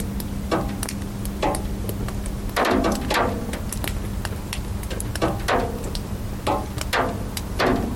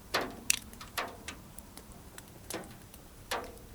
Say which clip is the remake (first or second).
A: second